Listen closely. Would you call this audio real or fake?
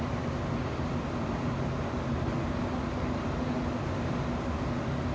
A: real